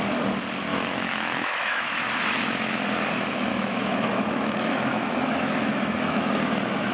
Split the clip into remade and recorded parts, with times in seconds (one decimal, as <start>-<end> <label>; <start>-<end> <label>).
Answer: 0.0-0.7 recorded; 0.7-2.8 remade; 2.8-3.5 recorded; 3.5-6.3 remade; 6.3-6.9 recorded